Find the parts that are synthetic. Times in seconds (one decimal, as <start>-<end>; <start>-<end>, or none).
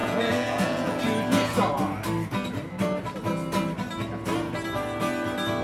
0.0-1.0